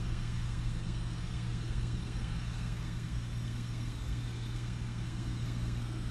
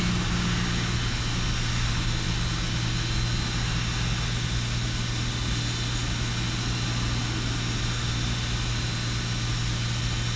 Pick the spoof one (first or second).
first